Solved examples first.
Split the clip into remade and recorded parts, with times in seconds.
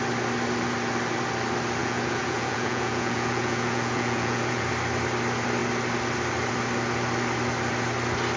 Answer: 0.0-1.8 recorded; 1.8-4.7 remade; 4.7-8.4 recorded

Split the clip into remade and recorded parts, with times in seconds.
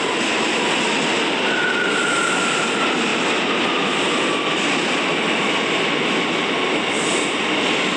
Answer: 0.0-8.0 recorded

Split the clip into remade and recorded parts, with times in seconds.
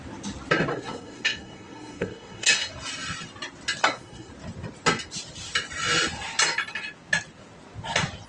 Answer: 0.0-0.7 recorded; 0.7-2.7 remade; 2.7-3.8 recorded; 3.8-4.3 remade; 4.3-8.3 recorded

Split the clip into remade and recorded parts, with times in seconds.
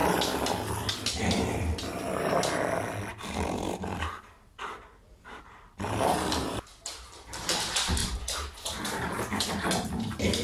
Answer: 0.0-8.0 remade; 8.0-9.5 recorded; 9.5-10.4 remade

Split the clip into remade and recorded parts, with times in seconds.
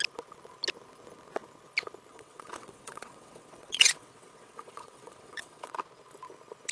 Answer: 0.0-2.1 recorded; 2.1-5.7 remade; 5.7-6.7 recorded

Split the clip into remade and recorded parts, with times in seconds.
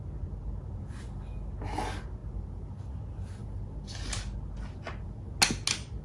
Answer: 0.0-6.0 recorded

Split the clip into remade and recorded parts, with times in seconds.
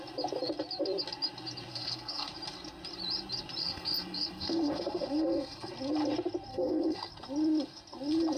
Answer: 0.0-1.7 recorded; 1.7-2.3 remade; 2.3-3.6 recorded; 3.6-5.7 remade; 5.7-6.5 recorded; 6.5-7.1 remade; 7.1-8.4 recorded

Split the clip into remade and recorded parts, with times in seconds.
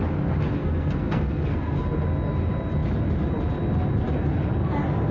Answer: 0.0-0.6 recorded; 0.6-1.8 remade; 1.8-5.1 recorded